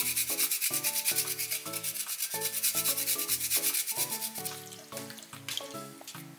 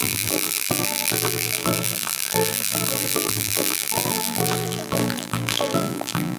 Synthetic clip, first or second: second